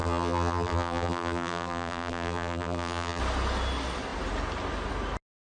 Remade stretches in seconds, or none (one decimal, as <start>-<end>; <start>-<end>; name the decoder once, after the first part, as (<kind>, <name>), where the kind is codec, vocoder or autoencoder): 0.0-3.2 (vocoder, BigVGAN v2)